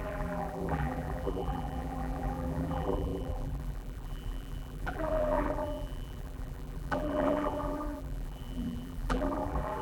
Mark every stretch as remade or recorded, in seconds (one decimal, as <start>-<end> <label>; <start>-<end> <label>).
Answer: 0.0-9.8 remade